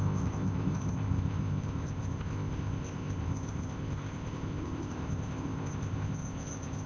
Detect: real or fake fake